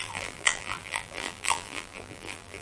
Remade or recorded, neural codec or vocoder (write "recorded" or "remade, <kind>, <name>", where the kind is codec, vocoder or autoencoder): remade, vocoder, BigVGAN v2